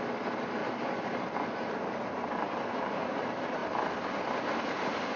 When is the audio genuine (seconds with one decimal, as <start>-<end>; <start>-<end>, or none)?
0.0-5.2